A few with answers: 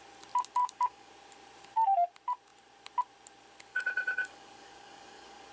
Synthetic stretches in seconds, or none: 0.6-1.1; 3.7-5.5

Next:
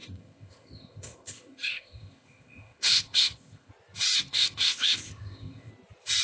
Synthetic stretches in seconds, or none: 0.0-3.7; 4.2-5.7

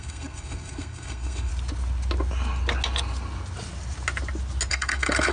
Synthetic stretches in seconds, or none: 0.0-1.5; 4.7-5.3

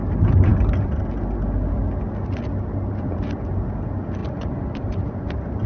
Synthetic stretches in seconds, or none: 4.2-5.1

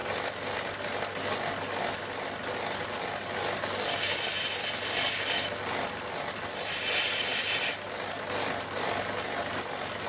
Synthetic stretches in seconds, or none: none

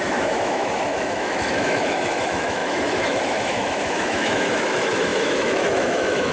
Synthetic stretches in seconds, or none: 0.0-6.3